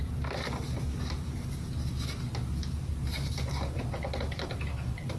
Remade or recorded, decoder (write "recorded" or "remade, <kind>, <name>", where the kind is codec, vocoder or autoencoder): recorded